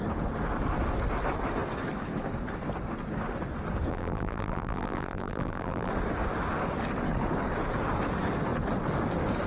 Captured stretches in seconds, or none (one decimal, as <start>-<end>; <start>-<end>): 0.0-3.9; 5.9-9.5